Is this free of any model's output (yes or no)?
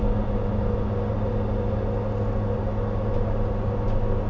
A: yes